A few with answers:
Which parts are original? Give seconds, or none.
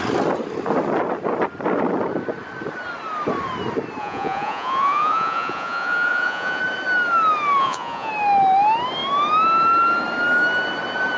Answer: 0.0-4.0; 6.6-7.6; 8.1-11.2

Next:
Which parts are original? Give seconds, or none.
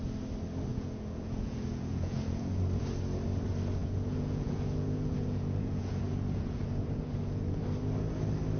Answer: 0.0-0.7; 2.6-3.8; 7.6-8.6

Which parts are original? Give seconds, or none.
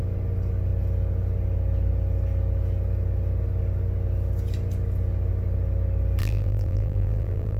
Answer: 0.0-6.2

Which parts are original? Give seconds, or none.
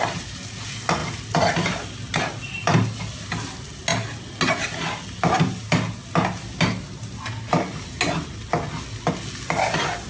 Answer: 0.0-10.1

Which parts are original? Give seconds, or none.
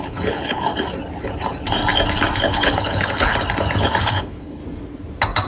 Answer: 0.7-2.4; 3.3-4.0; 4.6-5.5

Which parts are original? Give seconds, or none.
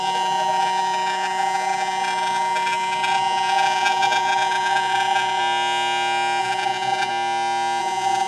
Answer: 5.4-6.4; 7.1-7.8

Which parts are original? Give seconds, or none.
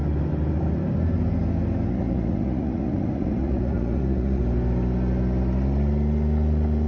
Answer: 0.0-1.9; 4.4-6.9